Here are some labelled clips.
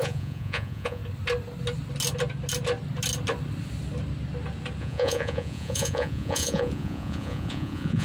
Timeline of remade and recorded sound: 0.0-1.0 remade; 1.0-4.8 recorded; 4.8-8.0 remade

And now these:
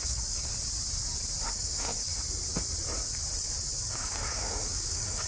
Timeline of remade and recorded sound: 0.0-0.5 remade; 0.5-1.5 recorded; 1.5-2.1 remade; 2.1-3.9 recorded; 3.9-5.3 remade

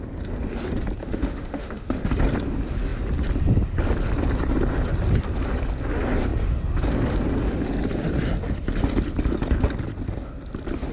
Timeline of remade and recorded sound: 0.0-1.0 recorded; 1.0-2.1 remade; 2.1-10.9 recorded

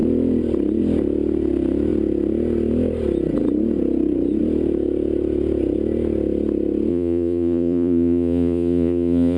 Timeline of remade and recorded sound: 0.0-6.9 recorded; 6.9-9.4 remade

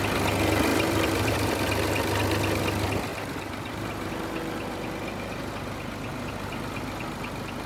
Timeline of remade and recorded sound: 0.0-0.7 recorded; 0.7-1.5 remade; 1.5-3.1 recorded; 3.1-4.1 remade; 4.1-7.7 recorded